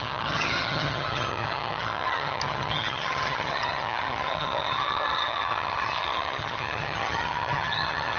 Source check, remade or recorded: remade